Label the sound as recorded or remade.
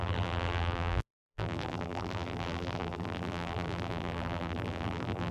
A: remade